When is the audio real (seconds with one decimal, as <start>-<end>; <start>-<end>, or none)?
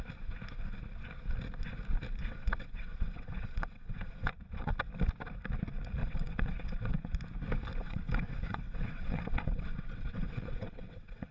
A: 0.0-2.2; 4.7-6.0; 7.2-7.8